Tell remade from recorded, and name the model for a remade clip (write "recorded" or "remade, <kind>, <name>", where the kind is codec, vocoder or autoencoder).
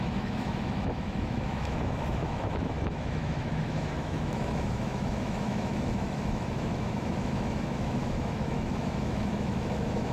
remade, autoencoder, DAC-VAE